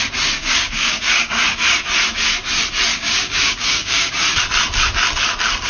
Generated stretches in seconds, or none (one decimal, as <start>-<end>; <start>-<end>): 0.4-1.3; 2.9-4.1